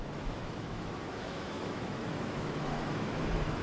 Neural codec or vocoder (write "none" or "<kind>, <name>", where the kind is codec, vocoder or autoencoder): autoencoder, DAC-VAE